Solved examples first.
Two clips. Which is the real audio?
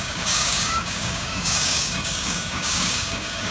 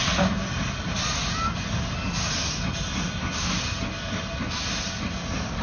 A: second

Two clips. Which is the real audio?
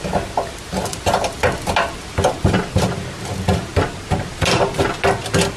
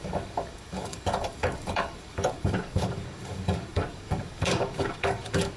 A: first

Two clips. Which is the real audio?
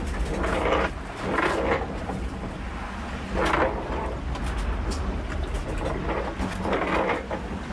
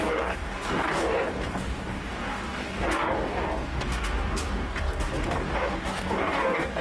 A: first